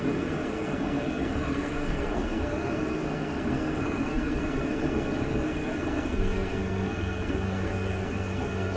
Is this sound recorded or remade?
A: remade